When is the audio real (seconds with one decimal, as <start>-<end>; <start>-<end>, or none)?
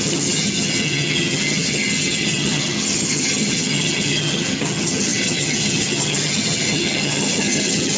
none